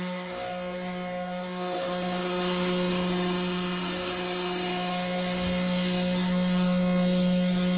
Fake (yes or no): yes